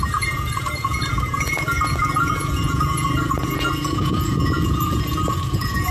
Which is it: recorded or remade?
remade